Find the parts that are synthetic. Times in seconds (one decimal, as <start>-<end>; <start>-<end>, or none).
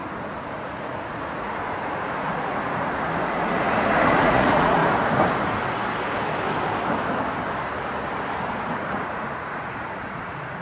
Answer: 0.0-4.8; 8.7-10.6